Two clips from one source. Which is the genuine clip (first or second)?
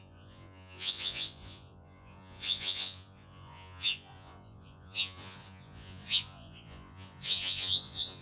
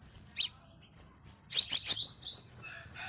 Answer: second